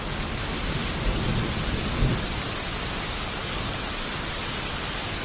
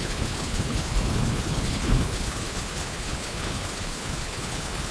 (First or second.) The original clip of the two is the first